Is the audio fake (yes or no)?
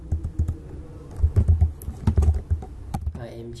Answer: no